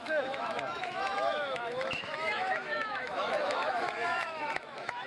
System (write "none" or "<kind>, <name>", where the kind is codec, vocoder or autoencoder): autoencoder, DAC-VAE